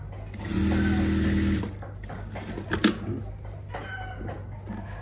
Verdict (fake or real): real